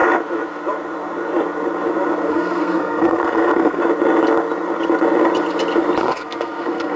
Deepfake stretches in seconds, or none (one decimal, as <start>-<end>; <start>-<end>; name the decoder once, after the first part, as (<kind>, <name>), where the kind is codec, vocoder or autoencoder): 2.3-3.8 (codec, SNAC); 6.0-7.0